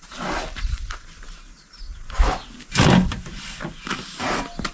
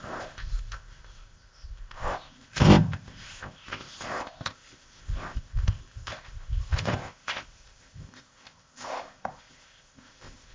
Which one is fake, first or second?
second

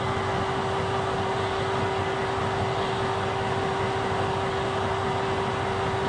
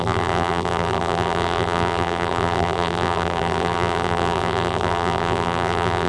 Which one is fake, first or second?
second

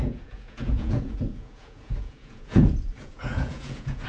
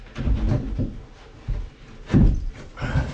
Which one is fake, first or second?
first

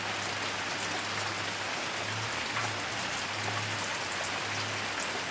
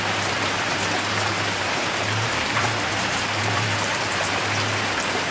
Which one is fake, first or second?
second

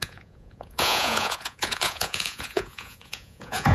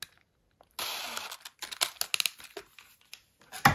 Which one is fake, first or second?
first